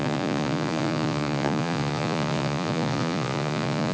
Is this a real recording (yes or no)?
no